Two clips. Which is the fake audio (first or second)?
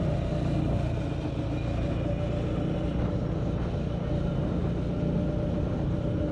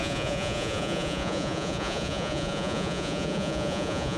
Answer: second